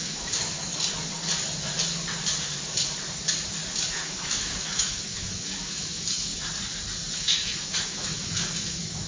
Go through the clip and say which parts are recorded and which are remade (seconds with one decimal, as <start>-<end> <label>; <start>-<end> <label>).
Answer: 0.0-0.7 remade; 0.7-3.9 recorded; 3.9-6.3 remade; 6.3-7.1 recorded; 7.1-9.1 remade